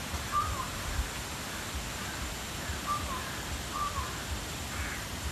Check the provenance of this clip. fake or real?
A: real